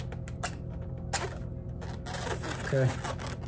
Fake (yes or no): no